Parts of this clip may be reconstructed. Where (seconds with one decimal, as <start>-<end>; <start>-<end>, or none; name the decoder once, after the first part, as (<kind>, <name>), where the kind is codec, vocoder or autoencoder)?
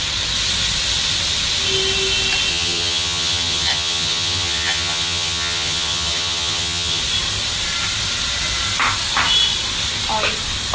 2.5-7.0 (vocoder, HiFi-GAN)